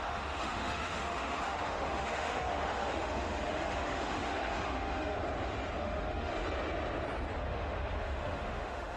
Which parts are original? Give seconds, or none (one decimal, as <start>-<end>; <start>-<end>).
5.2-5.8; 6.3-7.4